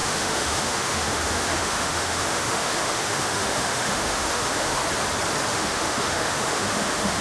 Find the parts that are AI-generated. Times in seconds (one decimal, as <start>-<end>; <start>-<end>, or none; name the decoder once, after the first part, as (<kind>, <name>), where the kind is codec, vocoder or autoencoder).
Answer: 0.0-4.8 (autoencoder, DAC-VAE); 5.5-7.2